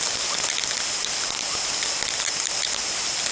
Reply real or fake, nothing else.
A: real